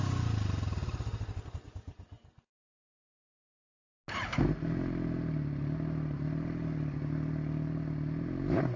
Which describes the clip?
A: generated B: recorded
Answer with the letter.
B